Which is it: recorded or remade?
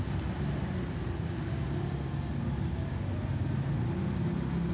recorded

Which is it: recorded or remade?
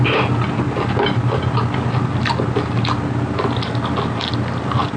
recorded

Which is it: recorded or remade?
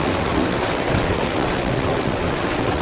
remade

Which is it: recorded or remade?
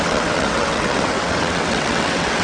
remade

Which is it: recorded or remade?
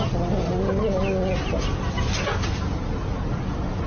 recorded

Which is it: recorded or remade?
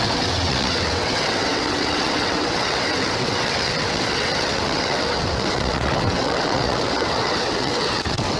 remade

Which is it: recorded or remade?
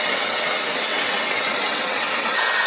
remade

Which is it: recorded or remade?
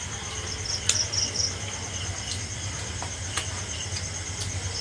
recorded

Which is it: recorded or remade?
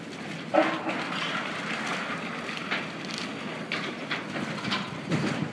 recorded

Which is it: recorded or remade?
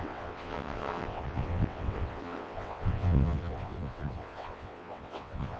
remade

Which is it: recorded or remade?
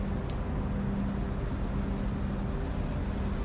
recorded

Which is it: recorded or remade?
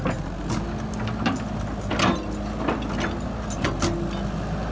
recorded